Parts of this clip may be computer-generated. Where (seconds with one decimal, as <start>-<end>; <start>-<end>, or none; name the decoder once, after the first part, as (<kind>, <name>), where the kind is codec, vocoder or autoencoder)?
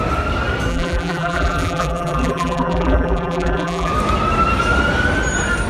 0.7-3.9 (vocoder, BigVGAN v2)